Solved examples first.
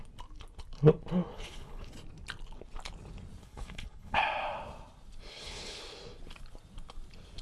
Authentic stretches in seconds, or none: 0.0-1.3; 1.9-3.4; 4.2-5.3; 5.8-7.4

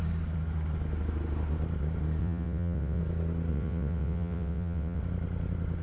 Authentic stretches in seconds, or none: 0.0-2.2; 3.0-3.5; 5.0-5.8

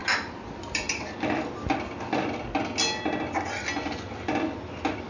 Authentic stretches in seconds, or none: 0.0-5.1

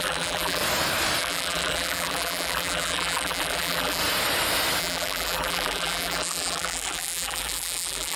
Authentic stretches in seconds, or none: 0.6-1.2; 4.0-4.8